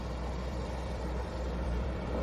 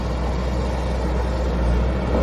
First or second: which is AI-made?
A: first